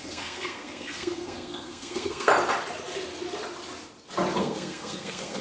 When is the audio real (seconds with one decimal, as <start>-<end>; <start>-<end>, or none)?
2.3-4.4